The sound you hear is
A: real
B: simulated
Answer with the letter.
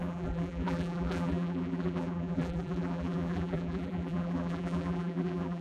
B